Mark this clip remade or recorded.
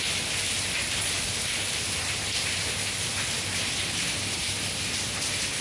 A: recorded